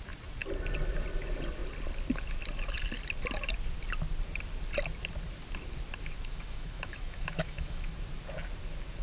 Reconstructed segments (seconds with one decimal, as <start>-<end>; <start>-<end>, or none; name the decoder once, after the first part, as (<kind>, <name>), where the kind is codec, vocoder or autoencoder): 6.3-7.9 (autoencoder, DAC-VAE)